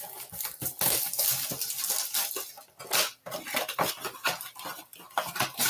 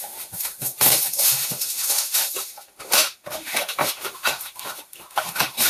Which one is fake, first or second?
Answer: second